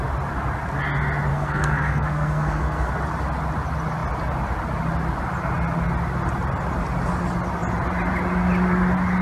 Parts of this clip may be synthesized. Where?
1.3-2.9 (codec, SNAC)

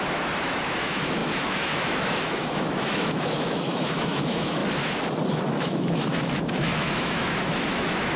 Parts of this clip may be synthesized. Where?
0.0-4.6 (autoencoder, DAC-VAE); 5.3-8.2

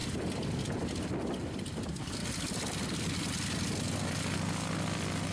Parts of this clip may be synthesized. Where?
1.8-2.2 (codec, DAC)

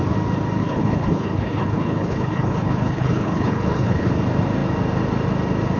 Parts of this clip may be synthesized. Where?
0.6-4.1 (codec, HILCodec)

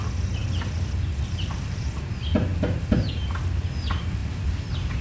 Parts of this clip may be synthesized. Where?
0.4-2.1 (vocoder, BigVGAN v2); 4.2-5.0

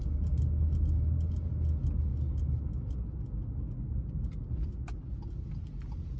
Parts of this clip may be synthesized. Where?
none

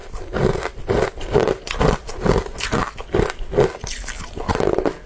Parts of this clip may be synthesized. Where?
none